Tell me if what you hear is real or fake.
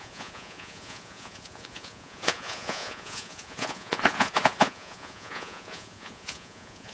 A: fake